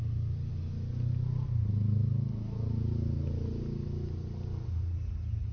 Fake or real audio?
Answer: real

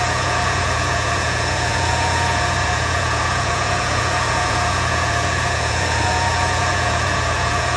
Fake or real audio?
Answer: fake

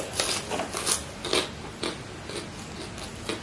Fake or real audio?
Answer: real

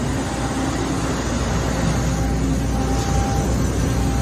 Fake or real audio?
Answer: real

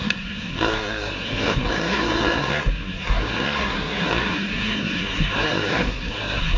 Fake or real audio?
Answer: fake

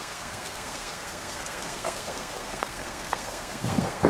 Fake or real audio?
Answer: fake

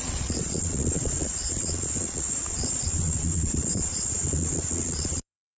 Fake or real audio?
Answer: fake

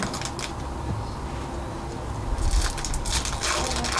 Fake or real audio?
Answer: real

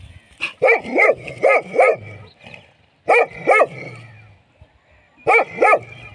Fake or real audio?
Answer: real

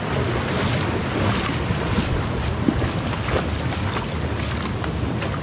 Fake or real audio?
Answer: real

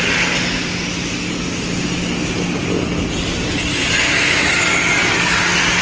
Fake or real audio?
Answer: real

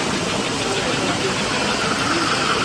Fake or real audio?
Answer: real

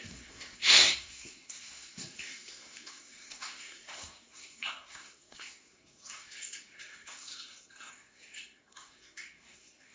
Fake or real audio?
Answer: fake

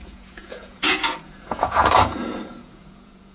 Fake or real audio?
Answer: fake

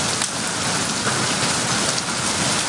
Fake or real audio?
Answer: real